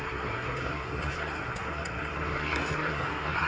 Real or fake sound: fake